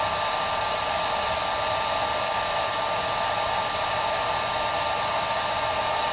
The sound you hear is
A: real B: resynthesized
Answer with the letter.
A